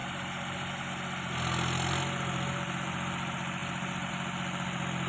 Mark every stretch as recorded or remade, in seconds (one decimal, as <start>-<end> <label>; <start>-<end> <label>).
0.0-5.1 recorded